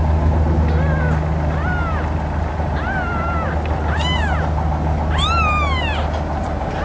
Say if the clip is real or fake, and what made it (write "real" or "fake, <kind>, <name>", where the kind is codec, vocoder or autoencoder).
real